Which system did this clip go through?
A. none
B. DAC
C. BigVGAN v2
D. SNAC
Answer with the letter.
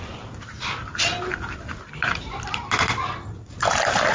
A